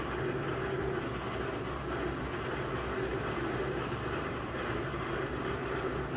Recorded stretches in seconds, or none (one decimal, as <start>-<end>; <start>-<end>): 0.0-3.1